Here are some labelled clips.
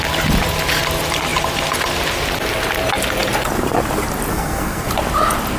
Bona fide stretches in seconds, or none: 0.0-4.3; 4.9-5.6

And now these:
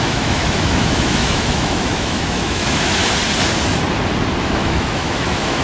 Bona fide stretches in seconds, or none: 3.0-4.4